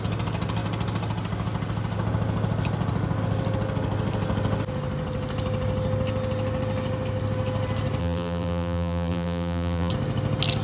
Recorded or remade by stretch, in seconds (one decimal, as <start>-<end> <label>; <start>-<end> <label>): 0.0-8.0 recorded; 8.0-9.9 remade; 9.9-10.6 recorded

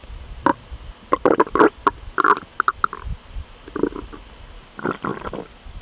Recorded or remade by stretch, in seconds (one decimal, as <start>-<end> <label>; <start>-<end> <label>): 0.0-5.8 recorded

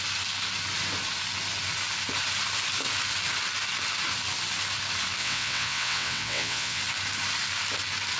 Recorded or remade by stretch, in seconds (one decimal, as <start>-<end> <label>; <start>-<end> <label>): 0.0-5.2 recorded; 5.2-6.8 remade; 6.8-8.2 recorded

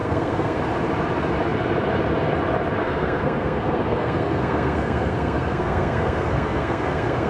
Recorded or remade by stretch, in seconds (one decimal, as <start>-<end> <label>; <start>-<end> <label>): 0.0-0.6 remade; 0.6-2.8 recorded; 2.8-7.3 remade